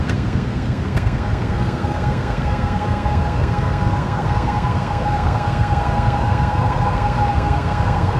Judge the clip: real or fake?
fake